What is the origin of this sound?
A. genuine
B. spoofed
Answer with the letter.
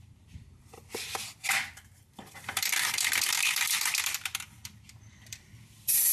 B